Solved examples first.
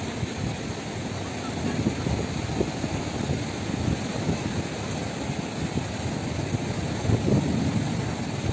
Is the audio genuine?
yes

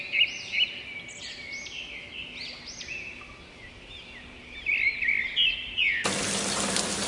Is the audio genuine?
yes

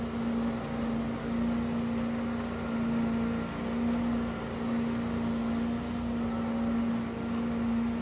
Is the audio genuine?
yes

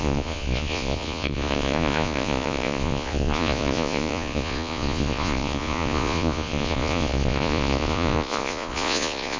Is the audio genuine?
no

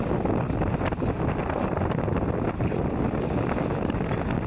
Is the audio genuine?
yes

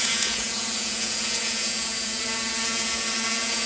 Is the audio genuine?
no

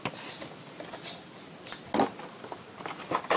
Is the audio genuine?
yes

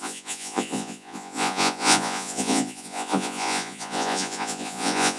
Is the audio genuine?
no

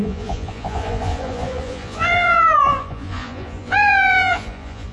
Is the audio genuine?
no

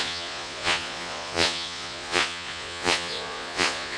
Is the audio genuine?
no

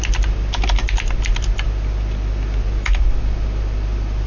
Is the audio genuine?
yes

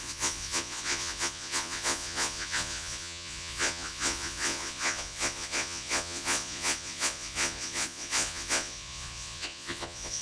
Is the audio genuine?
no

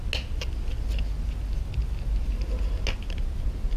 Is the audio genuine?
yes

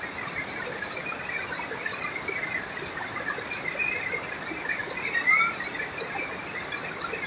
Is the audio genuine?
yes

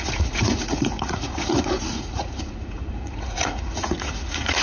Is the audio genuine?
no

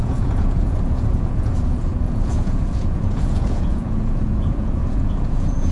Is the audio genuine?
no